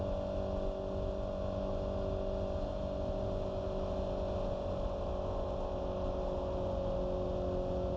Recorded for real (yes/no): yes